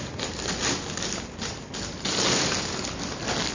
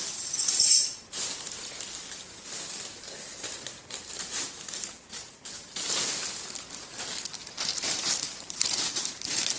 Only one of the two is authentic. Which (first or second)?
first